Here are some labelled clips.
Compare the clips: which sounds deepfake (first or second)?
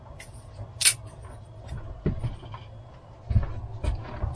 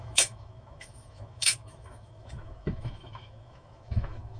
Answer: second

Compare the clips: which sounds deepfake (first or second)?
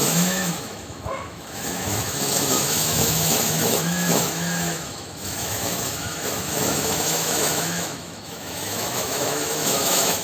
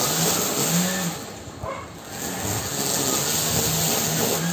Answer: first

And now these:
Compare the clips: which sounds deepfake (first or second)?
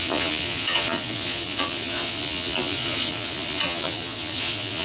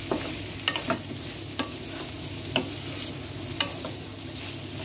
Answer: first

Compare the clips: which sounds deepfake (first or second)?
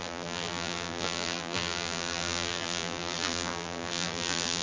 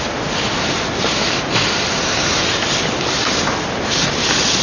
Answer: first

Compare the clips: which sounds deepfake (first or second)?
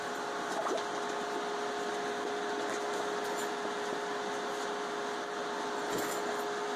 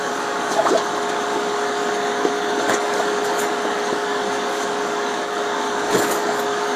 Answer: second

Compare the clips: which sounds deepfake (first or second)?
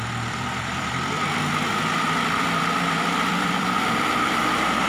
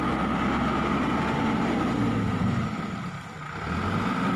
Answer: first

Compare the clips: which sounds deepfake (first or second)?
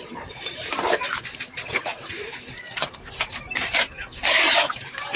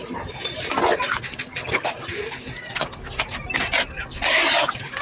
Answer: first